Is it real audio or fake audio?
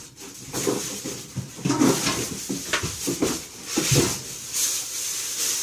real